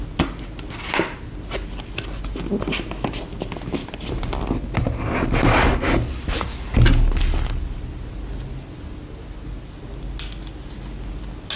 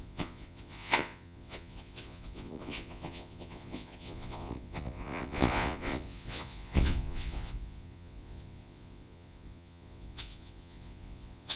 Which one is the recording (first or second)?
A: first